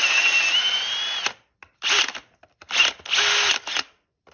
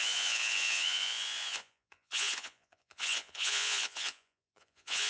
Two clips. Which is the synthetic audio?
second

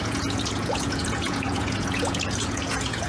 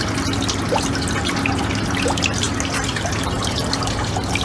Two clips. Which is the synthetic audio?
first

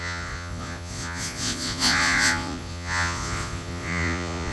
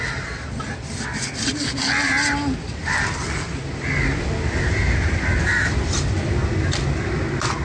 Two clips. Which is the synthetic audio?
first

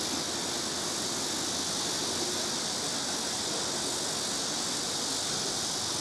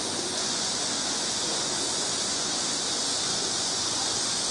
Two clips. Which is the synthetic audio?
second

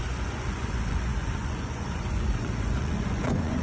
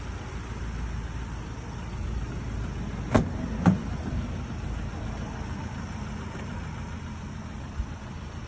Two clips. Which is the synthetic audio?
first